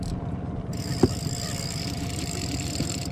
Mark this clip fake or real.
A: real